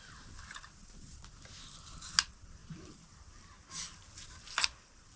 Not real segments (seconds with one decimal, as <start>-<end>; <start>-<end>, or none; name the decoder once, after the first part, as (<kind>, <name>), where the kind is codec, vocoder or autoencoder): none

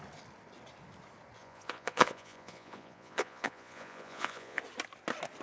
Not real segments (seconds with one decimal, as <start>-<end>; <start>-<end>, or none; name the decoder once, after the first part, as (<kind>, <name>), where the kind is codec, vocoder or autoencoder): 1.4-4.6 (vocoder, Vocos)

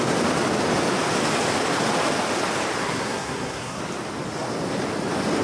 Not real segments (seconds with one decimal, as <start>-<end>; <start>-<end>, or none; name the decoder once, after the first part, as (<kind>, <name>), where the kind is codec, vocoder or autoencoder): 2.8-3.8 (codec, SNAC)

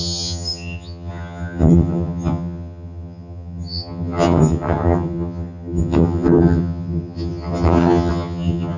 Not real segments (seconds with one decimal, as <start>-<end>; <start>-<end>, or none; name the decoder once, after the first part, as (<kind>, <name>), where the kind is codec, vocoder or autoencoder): 0.0-8.8 (vocoder, HiFi-GAN)

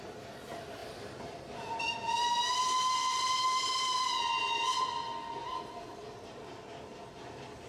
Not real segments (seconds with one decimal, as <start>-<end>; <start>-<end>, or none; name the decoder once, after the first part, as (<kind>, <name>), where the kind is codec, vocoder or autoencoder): 5.4-6.2 (vocoder, BigVGAN v2)

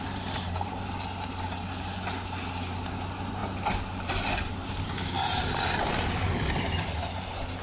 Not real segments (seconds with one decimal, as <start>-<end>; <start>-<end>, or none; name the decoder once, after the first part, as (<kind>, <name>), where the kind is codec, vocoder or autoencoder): none

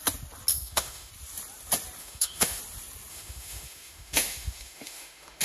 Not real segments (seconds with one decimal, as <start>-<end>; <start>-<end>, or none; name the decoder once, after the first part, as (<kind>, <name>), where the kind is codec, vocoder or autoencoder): 0.5-1.1 (autoencoder, DAC-VAE); 2.0-2.6; 3.1-5.4

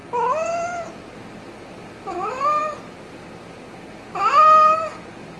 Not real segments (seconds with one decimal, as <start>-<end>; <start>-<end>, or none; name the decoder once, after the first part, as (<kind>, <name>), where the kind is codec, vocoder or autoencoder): none